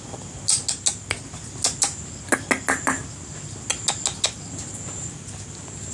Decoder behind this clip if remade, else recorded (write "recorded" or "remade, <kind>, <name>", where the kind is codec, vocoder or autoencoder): recorded